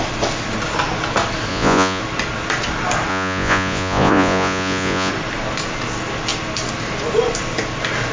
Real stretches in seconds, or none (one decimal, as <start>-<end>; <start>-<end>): 0.0-1.5; 2.0-3.1; 5.1-8.1

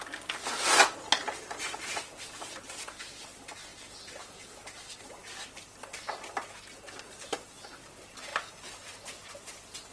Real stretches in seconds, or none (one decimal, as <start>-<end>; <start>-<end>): 0.0-9.9